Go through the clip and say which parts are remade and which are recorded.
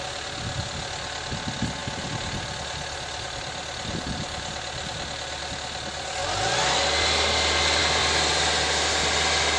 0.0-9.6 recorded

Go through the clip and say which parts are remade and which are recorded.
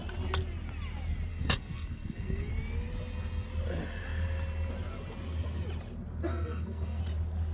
0.0-1.3 recorded; 1.3-2.5 remade; 2.5-6.3 recorded; 6.3-7.0 remade; 7.0-7.5 recorded